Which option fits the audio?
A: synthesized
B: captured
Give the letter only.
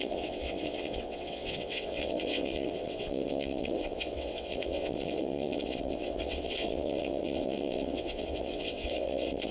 A